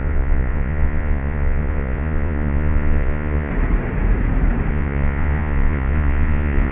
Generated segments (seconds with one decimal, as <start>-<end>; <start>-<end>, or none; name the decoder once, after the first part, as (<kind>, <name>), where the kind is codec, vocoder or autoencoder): 0.0-3.5 (vocoder, Vocos); 4.7-6.7